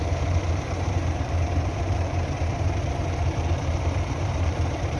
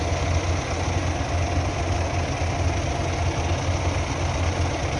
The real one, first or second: second